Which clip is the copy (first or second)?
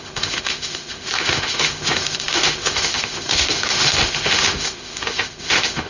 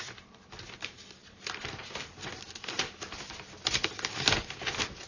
first